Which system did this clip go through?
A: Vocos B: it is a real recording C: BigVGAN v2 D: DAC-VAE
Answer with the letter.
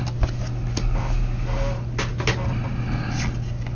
B